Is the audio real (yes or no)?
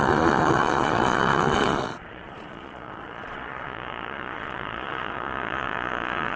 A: no